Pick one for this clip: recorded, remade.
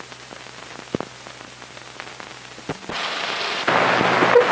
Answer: recorded